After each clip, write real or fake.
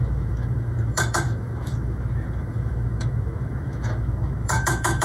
fake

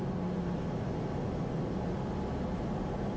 real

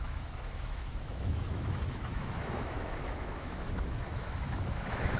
fake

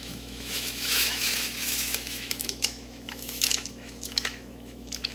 fake